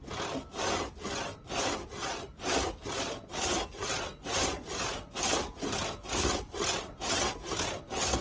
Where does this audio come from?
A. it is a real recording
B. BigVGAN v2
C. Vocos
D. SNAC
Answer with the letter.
A